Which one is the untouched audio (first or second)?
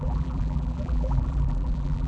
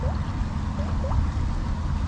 second